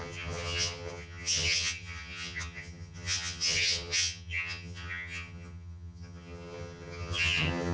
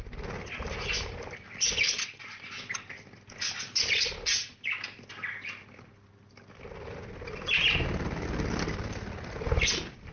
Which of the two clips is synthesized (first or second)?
first